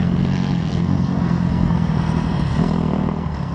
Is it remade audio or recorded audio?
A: remade